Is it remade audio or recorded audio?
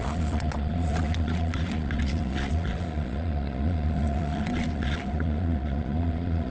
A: remade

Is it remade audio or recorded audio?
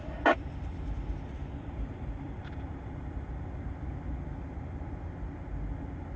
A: recorded